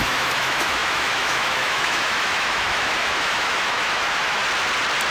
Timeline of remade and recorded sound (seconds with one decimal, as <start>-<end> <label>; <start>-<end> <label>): 0.0-4.4 remade; 4.4-5.1 recorded